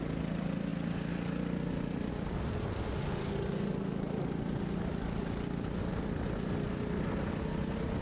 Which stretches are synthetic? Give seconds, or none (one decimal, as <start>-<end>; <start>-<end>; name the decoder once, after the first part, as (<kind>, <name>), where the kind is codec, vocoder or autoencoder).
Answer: 3.2-4.3 (codec, DAC)